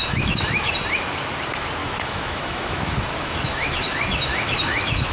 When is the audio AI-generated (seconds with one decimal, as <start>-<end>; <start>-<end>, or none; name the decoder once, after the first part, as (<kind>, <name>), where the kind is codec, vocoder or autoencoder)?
0.0-0.7 (autoencoder, DAC-VAE); 1.8-5.1